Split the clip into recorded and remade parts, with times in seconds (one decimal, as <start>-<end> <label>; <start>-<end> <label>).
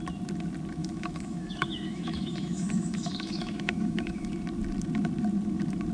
0.0-0.8 recorded; 0.8-4.3 remade; 4.3-5.9 recorded